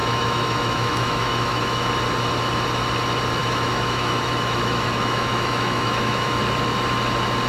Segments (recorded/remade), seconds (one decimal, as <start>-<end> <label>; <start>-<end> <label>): 0.0-1.9 remade; 1.9-3.4 recorded; 3.4-6.4 remade; 6.4-7.5 recorded